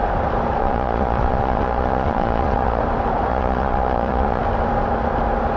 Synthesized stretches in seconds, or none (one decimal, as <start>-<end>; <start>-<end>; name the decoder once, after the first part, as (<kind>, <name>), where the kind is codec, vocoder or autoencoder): 0.6-2.8 (vocoder, Vocos); 3.3-4.4